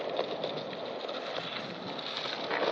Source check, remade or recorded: recorded